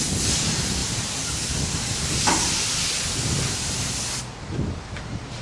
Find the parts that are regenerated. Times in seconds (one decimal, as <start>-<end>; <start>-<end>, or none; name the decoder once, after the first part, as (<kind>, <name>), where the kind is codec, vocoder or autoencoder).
0.8-4.0 (vocoder, BigVGAN v2)